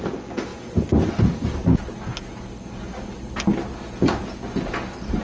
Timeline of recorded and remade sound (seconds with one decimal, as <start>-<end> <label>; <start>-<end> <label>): 0.0-5.2 recorded